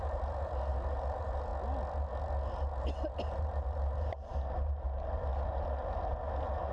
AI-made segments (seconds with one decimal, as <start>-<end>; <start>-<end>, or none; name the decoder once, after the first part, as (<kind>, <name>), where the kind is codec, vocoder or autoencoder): 0.0-1.5 (vocoder, BigVGAN v2); 2.8-4.3